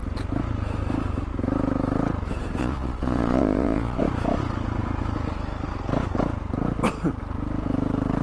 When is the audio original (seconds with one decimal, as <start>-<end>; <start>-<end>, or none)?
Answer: 0.0-2.6; 4.0-8.2